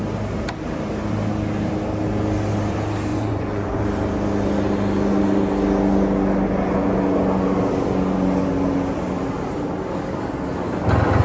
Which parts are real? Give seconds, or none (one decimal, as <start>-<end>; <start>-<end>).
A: 0.0-3.1; 3.8-11.2